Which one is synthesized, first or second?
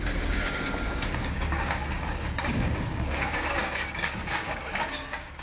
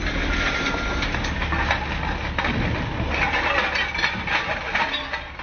first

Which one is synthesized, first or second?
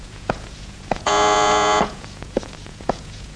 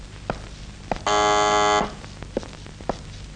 first